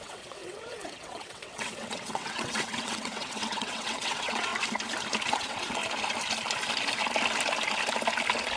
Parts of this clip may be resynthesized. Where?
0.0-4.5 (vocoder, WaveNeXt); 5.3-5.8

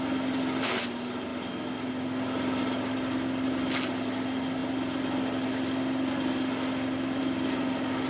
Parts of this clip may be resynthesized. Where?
none

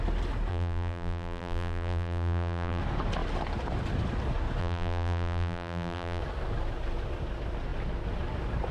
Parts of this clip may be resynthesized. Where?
0.5-2.8 (vocoder, BigVGAN v2); 4.6-6.2

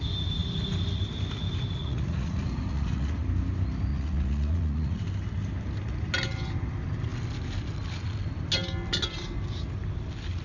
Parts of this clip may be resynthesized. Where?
1.8-3.2 (vocoder, Vocos); 3.9-5.0

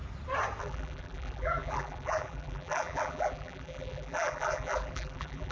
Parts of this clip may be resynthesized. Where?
0.6-5.5 (vocoder, BigVGAN v2)